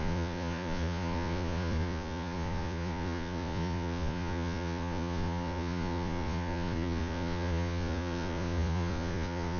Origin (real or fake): fake